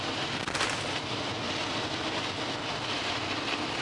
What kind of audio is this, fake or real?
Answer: real